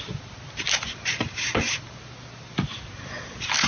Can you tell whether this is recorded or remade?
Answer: recorded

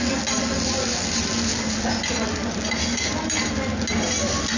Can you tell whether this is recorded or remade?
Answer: recorded